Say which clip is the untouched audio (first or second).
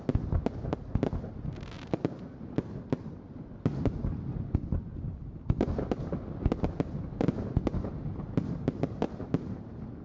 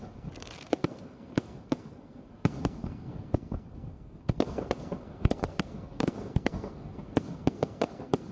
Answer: first